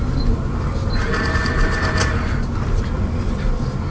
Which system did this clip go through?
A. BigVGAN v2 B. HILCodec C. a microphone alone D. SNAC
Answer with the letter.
C